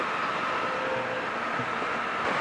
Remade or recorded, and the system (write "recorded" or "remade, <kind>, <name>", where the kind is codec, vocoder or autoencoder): recorded